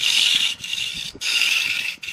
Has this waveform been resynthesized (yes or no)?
yes